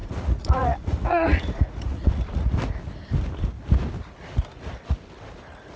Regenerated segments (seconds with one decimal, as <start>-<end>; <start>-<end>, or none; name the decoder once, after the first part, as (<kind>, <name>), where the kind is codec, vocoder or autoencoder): 0.0-2.5 (vocoder, Vocos)